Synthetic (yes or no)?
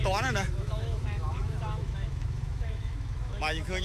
yes